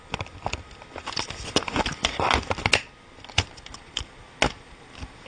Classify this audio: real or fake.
real